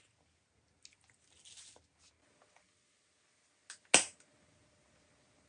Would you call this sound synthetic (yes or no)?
no